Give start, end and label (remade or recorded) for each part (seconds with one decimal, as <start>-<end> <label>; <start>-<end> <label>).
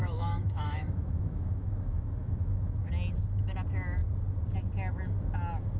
0.0-2.9 remade; 2.9-5.8 recorded